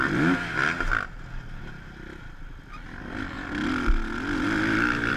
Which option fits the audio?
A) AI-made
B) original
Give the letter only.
B